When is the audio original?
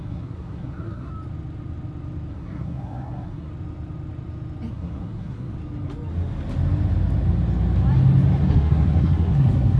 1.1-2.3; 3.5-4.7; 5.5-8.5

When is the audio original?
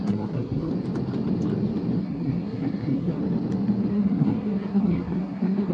0.7-2.0; 3.2-3.9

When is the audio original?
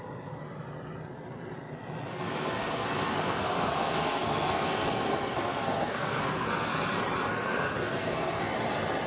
0.0-2.1; 6.7-7.3; 8.5-9.1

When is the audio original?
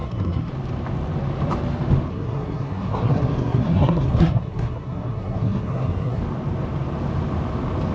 0.5-2.1; 6.2-7.9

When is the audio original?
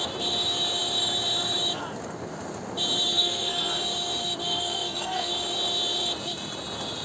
0.0-3.1; 3.7-4.4; 5.3-7.0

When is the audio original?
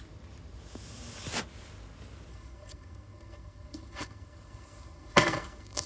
0.0-2.3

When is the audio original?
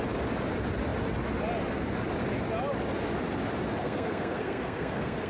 0.0-3.8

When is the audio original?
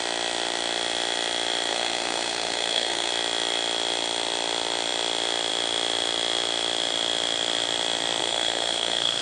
0.0-1.7; 3.1-8.2